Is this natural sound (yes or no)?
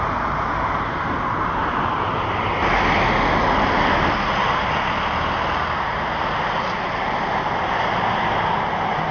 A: yes